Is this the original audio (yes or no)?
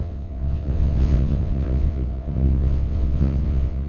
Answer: no